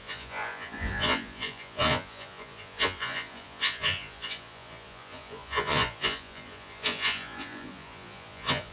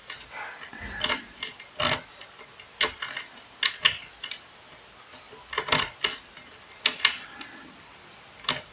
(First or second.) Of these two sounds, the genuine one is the second